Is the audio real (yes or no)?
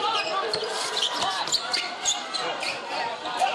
no